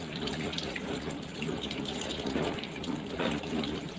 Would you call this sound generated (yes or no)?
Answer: yes